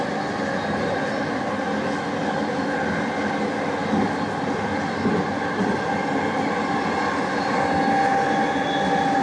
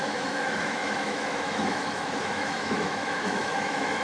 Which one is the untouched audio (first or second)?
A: first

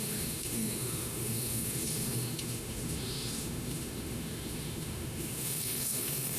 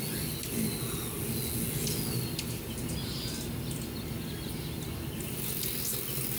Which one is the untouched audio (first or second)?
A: second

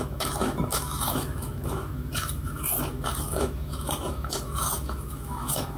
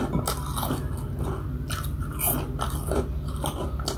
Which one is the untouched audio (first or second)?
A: second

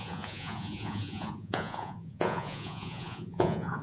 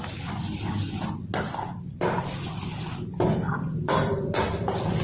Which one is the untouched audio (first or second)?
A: second